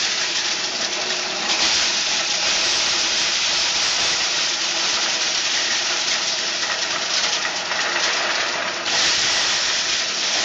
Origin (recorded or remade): remade